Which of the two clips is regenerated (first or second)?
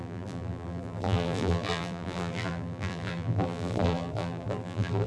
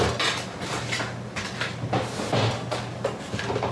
first